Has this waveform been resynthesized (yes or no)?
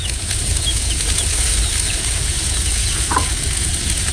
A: yes